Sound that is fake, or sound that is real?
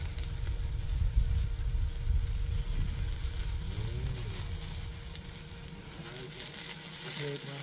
real